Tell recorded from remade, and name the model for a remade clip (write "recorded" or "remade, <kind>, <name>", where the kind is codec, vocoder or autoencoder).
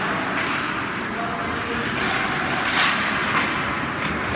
recorded